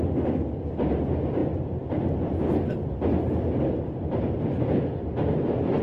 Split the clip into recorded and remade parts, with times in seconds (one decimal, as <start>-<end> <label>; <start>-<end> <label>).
0.0-1.4 recorded; 1.4-4.9 remade; 4.9-5.8 recorded

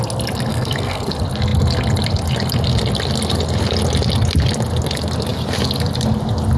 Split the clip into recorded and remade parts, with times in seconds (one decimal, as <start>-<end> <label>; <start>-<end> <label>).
0.0-0.5 recorded; 0.5-1.1 remade; 1.1-6.6 recorded

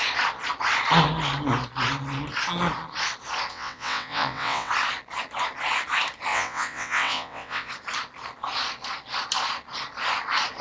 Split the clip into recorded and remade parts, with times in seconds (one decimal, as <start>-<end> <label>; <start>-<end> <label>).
0.0-3.5 recorded; 3.5-4.7 remade; 4.7-6.3 recorded; 6.3-7.7 remade; 7.7-10.6 recorded

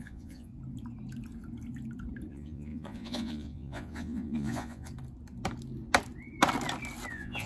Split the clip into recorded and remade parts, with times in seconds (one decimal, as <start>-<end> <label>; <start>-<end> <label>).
0.0-0.5 remade; 0.5-2.3 recorded; 2.3-4.9 remade; 4.9-7.1 recorded; 7.1-7.5 remade

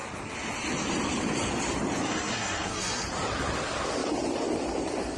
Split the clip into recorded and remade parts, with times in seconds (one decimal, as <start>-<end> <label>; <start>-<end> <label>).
0.0-2.0 recorded; 2.0-3.0 remade; 3.0-5.2 recorded

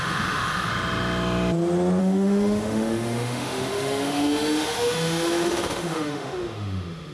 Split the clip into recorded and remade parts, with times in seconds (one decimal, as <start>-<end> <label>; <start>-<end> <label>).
0.0-0.7 remade; 0.7-2.0 recorded; 2.0-7.1 remade

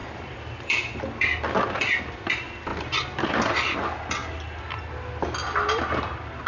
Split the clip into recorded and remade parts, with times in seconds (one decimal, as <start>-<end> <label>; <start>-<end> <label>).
0.0-2.7 remade; 2.7-3.3 recorded; 3.3-6.5 remade